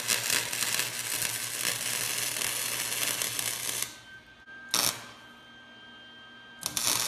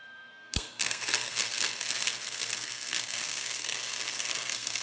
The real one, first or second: first